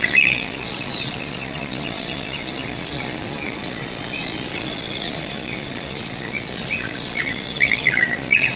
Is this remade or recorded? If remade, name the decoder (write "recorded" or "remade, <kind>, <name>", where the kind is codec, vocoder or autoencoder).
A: remade, vocoder, Vocos